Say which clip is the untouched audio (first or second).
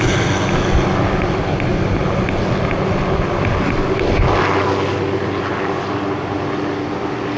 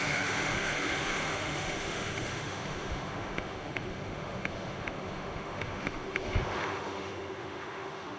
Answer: first